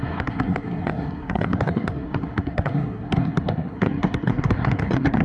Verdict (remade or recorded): remade